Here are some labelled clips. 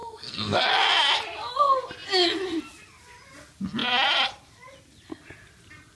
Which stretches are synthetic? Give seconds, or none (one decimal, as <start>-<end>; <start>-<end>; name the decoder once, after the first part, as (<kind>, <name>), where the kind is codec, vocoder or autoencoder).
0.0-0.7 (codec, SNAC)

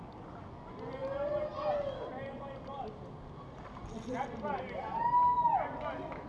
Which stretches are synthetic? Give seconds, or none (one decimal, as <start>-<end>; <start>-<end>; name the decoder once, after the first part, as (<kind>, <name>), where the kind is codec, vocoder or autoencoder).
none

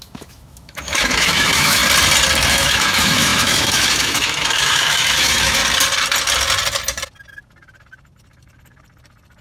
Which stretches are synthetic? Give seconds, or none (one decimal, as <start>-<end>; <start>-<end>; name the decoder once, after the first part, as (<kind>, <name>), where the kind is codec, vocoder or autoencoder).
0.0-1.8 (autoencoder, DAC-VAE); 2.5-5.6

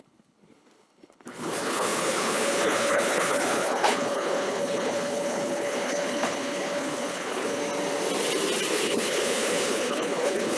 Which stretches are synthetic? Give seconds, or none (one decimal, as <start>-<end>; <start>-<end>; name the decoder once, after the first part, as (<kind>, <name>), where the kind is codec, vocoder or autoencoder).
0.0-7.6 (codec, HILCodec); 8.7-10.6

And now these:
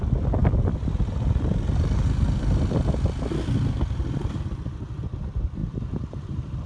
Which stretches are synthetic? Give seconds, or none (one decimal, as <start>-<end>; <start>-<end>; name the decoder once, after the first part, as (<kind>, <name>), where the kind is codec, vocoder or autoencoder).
5.6-6.7 (vocoder, BigVGAN v2)